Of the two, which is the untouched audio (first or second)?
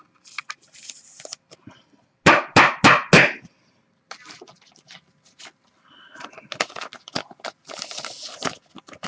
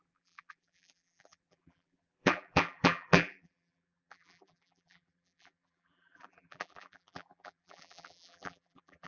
first